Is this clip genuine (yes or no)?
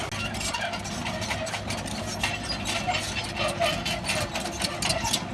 yes